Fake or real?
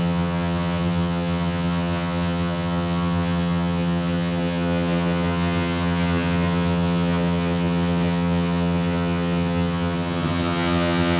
fake